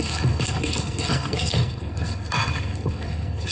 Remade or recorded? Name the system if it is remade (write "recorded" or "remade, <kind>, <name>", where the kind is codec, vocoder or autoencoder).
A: remade, codec, SNAC